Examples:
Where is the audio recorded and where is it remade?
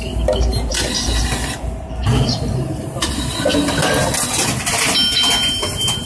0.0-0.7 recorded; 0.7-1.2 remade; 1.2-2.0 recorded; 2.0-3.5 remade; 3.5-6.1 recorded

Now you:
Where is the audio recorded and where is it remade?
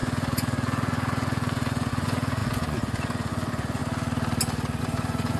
0.0-3.8 remade; 3.8-4.8 recorded; 4.8-5.4 remade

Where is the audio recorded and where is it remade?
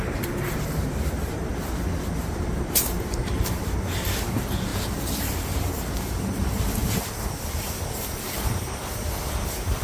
0.0-1.5 remade; 1.5-2.2 recorded; 2.2-9.8 remade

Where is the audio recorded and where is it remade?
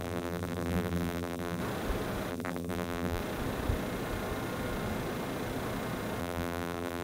0.0-1.6 remade; 1.6-2.3 recorded; 2.3-3.2 remade; 3.2-6.2 recorded; 6.2-7.0 remade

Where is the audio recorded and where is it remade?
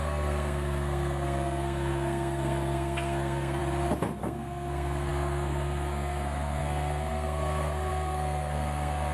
0.0-3.6 remade; 3.6-4.2 recorded; 4.2-9.1 remade